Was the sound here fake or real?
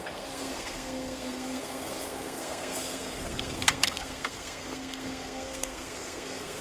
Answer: fake